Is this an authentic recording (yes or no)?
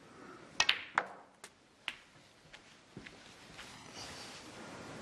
yes